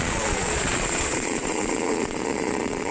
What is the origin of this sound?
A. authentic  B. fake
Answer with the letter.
B